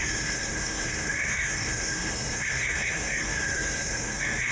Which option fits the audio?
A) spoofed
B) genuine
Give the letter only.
A